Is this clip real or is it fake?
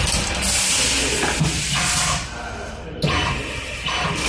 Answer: real